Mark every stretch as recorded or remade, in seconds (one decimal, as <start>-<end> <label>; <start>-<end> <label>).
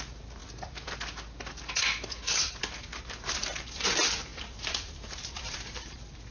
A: 0.0-0.4 remade; 0.4-2.6 recorded; 2.6-6.3 remade